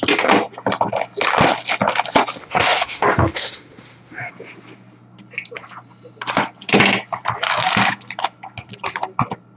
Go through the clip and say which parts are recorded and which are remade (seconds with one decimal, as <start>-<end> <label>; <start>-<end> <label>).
0.0-2.4 recorded; 2.4-4.3 remade; 4.3-9.6 recorded